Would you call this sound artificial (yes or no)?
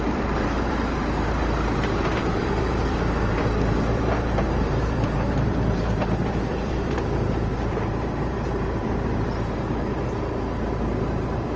yes